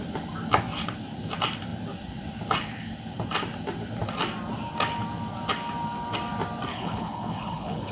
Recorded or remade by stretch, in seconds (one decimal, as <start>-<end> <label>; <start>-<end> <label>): 0.0-6.7 recorded; 6.7-7.9 remade